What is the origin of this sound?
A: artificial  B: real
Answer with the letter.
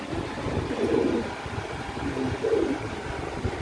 B